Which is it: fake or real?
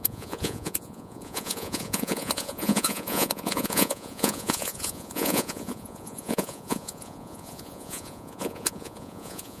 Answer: fake